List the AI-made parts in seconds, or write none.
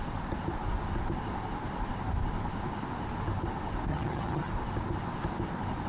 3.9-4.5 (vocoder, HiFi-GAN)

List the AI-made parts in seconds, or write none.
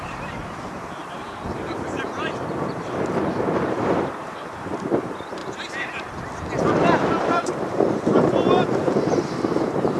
0.0-5.4 (vocoder, BigVGAN v2); 7.2-10.0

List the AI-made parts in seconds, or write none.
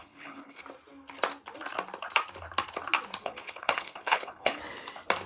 0.0-0.6 (codec, HILCodec); 3.2-4.6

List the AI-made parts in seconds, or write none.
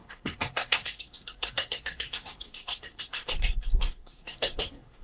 0.0-5.0 (codec, SNAC)